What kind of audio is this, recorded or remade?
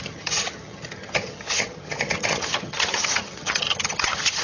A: remade